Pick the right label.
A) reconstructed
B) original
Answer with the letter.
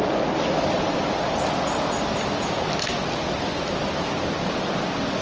B